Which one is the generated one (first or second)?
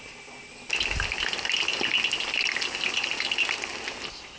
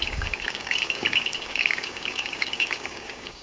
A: second